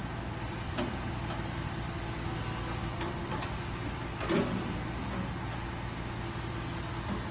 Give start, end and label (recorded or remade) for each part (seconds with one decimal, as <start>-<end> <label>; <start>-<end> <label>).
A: 0.0-7.3 recorded